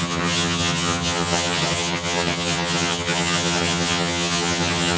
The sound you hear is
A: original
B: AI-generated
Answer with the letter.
B